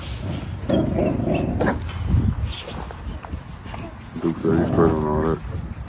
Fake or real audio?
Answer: real